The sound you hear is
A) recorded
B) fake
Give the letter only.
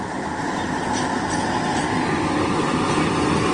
A